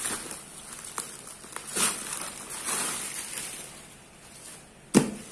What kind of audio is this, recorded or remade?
recorded